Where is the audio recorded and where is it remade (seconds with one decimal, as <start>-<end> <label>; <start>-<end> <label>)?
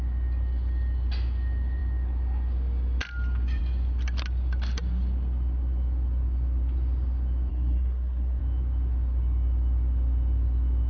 0.0-7.5 recorded; 7.5-8.4 remade; 8.4-10.9 recorded